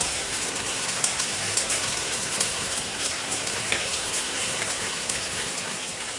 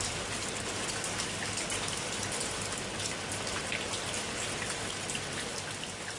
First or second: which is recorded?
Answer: second